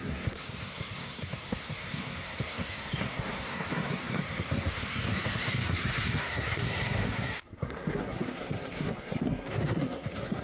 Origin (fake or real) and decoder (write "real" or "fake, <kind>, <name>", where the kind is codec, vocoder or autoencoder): fake, codec, SNAC